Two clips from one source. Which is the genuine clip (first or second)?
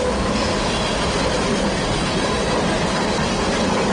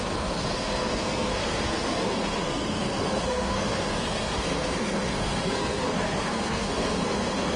first